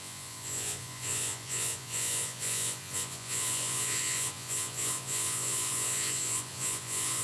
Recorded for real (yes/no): no